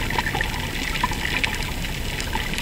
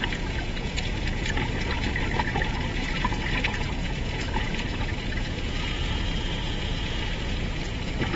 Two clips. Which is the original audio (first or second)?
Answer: first